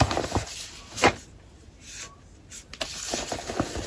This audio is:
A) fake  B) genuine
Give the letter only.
B